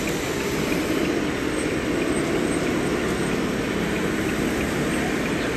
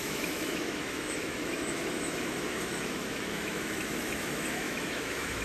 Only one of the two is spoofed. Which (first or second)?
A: second